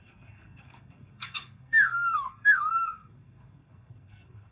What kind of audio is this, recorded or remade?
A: remade